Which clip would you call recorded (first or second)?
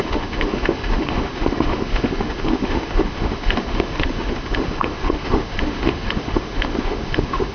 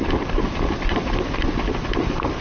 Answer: second